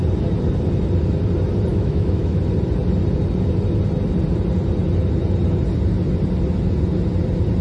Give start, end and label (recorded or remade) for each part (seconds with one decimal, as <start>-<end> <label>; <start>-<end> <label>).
0.0-1.7 recorded; 1.7-2.4 remade; 2.4-7.6 recorded

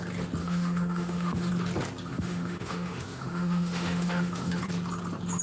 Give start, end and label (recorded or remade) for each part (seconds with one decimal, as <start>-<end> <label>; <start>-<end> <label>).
0.0-0.4 recorded; 0.4-1.5 remade; 1.5-2.1 recorded; 2.1-4.6 remade; 4.6-5.4 recorded